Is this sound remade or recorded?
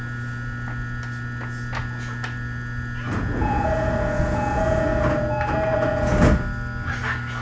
recorded